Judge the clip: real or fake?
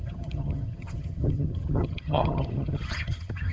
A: fake